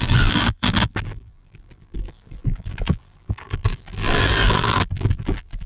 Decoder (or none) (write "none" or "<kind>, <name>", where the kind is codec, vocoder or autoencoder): vocoder, BigVGAN v2